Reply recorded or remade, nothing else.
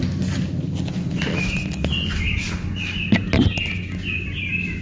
recorded